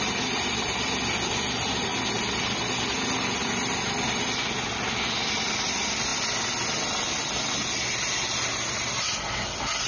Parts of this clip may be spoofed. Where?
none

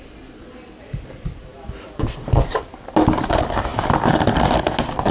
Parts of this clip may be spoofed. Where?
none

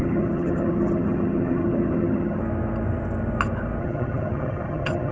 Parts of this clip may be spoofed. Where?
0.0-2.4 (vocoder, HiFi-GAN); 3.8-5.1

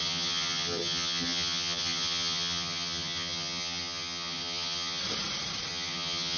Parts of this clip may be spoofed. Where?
0.0-5.0 (vocoder, HiFi-GAN); 5.7-6.4

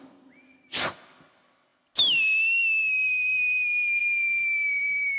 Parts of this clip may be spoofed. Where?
none

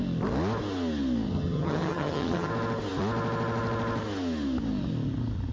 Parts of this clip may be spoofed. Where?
1.3-2.5 (vocoder, HiFi-GAN)

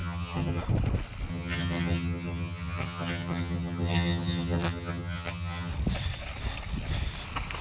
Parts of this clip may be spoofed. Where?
0.0-0.6 (vocoder, HiFi-GAN); 1.3-5.7

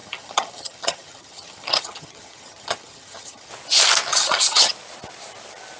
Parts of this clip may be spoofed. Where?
0.0-3.5 (vocoder, HiFi-GAN); 4.1-4.7